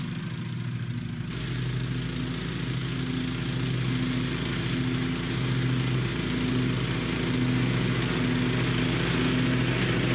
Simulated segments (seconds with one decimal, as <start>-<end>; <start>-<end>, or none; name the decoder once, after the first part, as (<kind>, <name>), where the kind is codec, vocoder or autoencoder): none